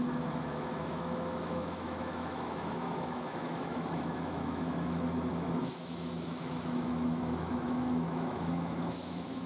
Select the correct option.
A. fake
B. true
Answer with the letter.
A